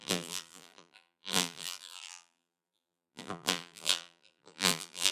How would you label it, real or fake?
fake